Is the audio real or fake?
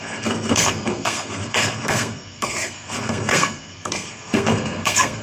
fake